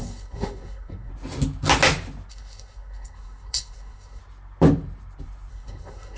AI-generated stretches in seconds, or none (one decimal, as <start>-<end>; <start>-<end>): 0.0-1.1; 2.3-4.2; 5.5-6.2